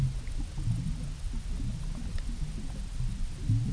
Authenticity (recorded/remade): recorded